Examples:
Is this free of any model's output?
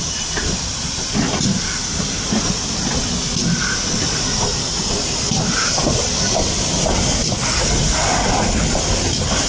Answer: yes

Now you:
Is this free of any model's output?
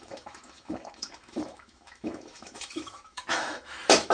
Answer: no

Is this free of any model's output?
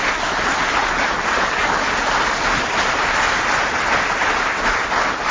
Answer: yes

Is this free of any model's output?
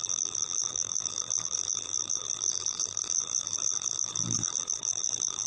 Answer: no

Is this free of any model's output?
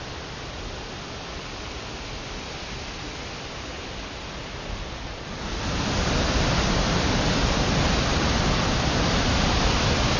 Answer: yes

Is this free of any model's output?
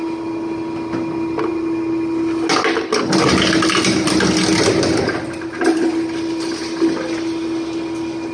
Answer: yes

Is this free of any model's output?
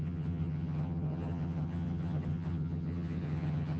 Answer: no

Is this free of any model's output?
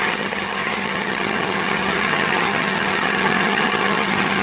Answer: no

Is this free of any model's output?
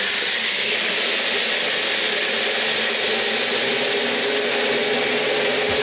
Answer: yes